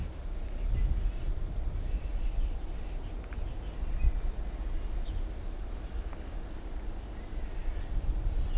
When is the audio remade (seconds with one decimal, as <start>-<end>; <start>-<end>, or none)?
none